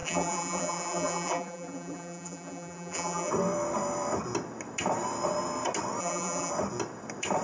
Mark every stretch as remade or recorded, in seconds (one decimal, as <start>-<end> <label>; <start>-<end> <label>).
0.0-3.3 remade; 3.3-6.0 recorded; 6.0-6.5 remade; 6.5-7.4 recorded